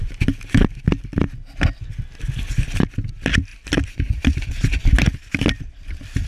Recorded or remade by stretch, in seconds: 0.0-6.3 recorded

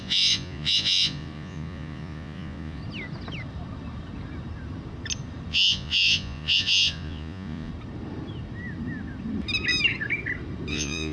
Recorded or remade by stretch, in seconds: 0.0-2.8 remade; 2.8-5.5 recorded; 5.5-7.7 remade; 7.7-10.7 recorded; 10.7-11.1 remade

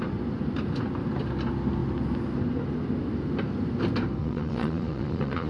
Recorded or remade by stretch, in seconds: 0.0-4.2 recorded; 4.2-5.5 remade

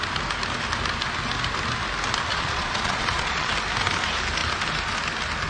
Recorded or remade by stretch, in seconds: 0.0-2.3 recorded; 2.3-3.5 remade; 3.5-5.5 recorded